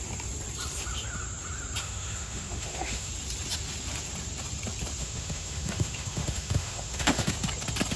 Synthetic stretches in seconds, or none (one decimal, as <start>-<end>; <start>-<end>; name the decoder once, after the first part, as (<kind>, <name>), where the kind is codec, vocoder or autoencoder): 1.8-3.1 (autoencoder, DAC-VAE); 5.0-7.3